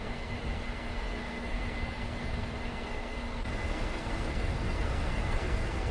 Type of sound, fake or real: fake